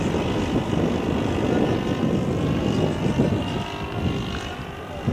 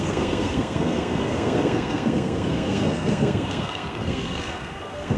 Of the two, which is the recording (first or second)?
first